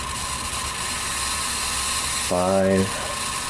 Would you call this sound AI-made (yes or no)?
no